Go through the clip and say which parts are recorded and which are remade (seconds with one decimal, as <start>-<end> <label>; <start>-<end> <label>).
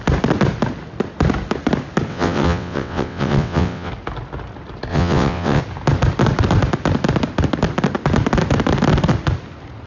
0.0-2.1 recorded; 2.1-3.9 remade; 3.9-4.9 recorded; 4.9-5.6 remade; 5.6-9.9 recorded